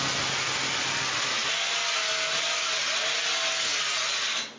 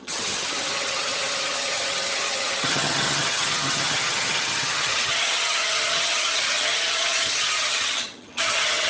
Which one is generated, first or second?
second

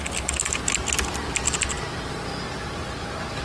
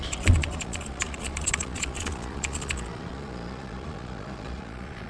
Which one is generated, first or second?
second